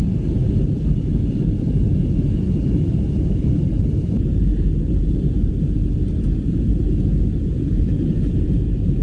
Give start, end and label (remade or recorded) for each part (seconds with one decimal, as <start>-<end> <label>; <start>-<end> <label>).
0.0-9.0 remade